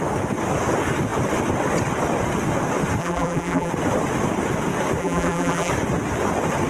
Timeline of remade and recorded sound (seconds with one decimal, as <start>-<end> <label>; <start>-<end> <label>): 0.0-3.0 recorded; 3.0-3.7 remade; 3.7-5.0 recorded; 5.0-5.7 remade; 5.7-6.7 recorded